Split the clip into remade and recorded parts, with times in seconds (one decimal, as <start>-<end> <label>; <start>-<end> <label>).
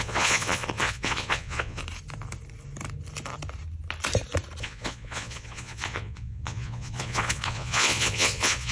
0.0-1.8 remade; 1.8-4.6 recorded; 4.6-8.7 remade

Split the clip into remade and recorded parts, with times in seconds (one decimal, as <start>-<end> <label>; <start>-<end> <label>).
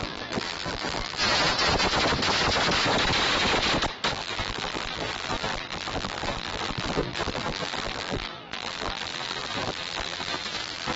0.0-1.2 remade; 1.2-4.1 recorded; 4.1-11.0 remade